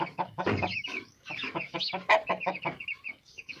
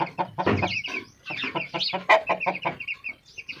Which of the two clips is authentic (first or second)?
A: second